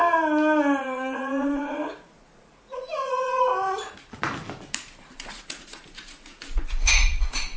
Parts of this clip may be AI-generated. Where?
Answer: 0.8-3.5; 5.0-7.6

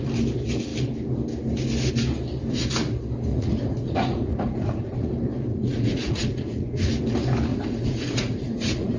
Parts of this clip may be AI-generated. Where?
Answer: 3.3-5.1; 5.5-6.9; 7.5-9.0

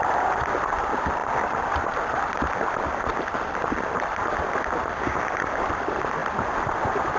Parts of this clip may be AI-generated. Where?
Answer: none

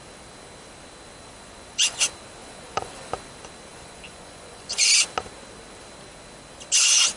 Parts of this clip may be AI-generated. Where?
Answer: 1.3-2.0; 2.4-3.1; 3.7-4.9

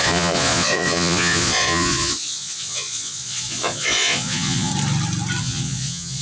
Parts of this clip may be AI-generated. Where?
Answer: 0.0-4.7; 5.4-6.2

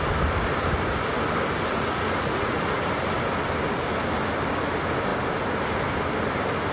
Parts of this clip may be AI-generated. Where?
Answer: 1.7-2.8

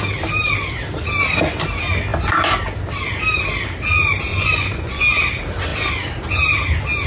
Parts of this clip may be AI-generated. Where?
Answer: 4.3-5.0